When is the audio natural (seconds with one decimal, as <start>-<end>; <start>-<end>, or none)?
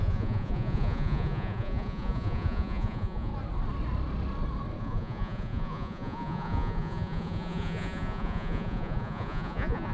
3.3-4.8